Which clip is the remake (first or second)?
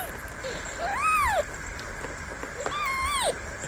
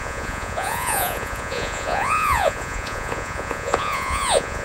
second